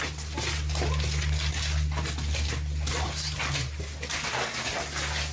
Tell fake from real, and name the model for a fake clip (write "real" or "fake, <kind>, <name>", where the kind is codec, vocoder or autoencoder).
real